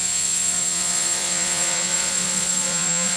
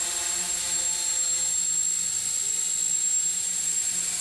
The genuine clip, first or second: second